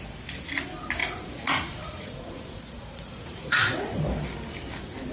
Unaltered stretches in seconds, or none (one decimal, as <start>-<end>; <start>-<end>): 0.0-1.0; 4.0-5.1